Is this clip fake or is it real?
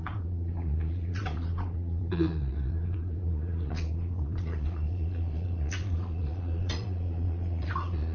fake